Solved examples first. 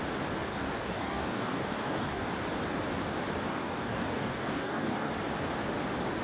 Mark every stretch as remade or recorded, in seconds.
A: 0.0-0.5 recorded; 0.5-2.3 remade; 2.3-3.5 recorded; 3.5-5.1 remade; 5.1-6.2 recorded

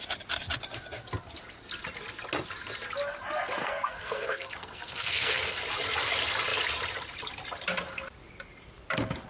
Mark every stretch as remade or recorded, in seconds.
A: 0.0-3.6 recorded; 3.6-5.5 remade; 5.5-9.3 recorded

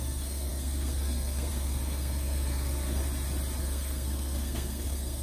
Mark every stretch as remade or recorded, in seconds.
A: 0.0-3.0 remade; 3.0-3.6 recorded; 3.6-5.2 remade

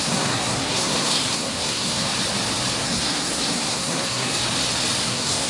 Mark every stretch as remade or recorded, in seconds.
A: 0.0-2.1 remade; 2.1-2.8 recorded; 2.8-4.4 remade; 4.4-5.0 recorded; 5.0-5.5 remade

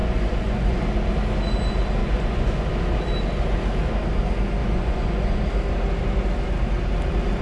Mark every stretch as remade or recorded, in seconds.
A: 0.0-0.8 remade; 0.8-2.0 recorded; 2.0-2.7 remade; 2.7-4.6 recorded; 4.6-5.4 remade; 5.4-7.4 recorded

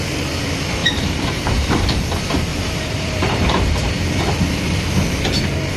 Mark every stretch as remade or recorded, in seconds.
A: 0.0-0.8 recorded; 0.8-2.0 remade; 2.0-2.5 recorded; 2.5-4.3 remade; 4.3-5.8 recorded

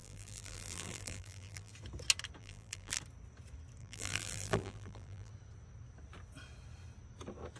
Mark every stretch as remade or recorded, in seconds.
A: 0.0-1.7 remade; 1.7-2.4 recorded; 2.4-3.0 remade; 3.0-3.8 recorded; 3.8-5.3 remade; 5.3-7.6 recorded

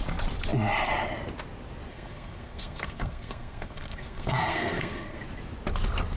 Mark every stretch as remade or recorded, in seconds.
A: 0.0-1.9 recorded; 1.9-5.2 remade; 5.2-6.2 recorded